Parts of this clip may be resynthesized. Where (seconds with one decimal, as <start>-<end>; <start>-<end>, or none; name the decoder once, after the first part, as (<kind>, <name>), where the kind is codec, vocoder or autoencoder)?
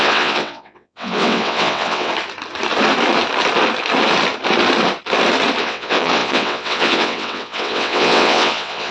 0.0-2.1 (vocoder, WaveNeXt); 5.6-8.9